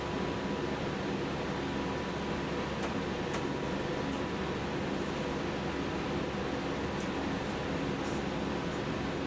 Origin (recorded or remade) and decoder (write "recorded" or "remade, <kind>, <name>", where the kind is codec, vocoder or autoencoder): recorded